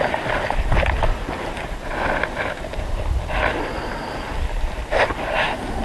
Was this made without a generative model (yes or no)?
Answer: yes